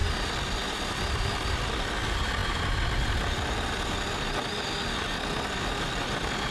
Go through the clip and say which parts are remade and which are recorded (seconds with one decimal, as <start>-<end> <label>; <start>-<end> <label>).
0.0-6.5 recorded